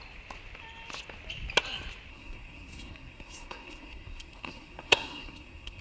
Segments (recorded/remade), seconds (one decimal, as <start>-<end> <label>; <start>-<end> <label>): 0.0-2.1 recorded; 2.1-5.8 remade